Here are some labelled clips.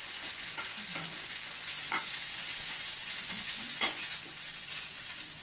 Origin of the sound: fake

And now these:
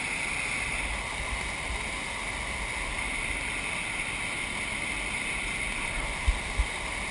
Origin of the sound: real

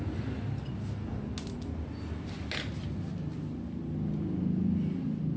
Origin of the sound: real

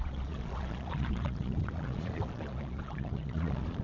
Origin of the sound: fake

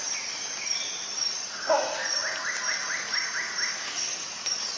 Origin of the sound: real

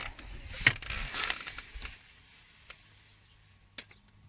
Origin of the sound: real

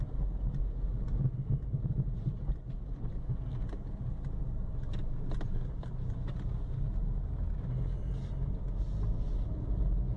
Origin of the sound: real